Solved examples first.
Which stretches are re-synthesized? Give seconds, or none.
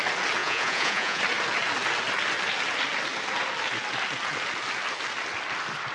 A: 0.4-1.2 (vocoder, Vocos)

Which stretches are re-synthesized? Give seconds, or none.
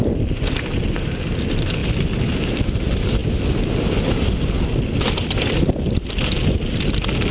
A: none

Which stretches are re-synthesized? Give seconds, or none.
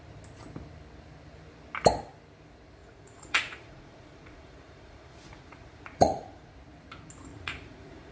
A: 2.8-6.5 (vocoder, Vocos); 7.3-8.1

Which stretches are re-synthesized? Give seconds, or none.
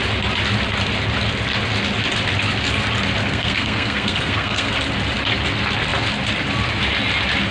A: 3.2-4.7 (codec, SNAC)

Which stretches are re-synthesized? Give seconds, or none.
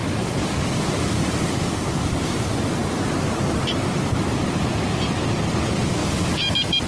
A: 0.0-2.1 (vocoder, BigVGAN v2)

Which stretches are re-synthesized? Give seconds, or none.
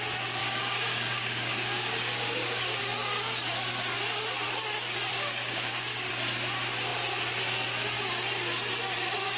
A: 0.4-2.8 (codec, DAC); 5.1-6.1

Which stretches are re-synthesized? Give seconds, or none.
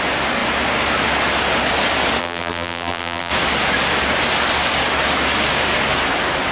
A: 2.2-3.3 (vocoder, BigVGAN v2)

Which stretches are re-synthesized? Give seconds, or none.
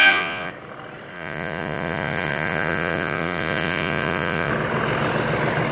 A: 0.0-0.5 (vocoder, Vocos); 1.1-4.5